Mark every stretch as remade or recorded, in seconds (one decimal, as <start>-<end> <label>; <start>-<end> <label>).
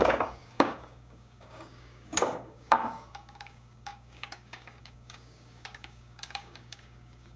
0.0-7.4 remade